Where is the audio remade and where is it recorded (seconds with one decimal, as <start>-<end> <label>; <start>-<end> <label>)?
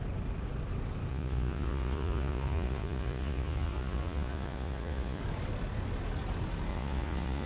0.0-1.1 recorded; 1.1-5.2 remade; 5.2-6.7 recorded; 6.7-7.5 remade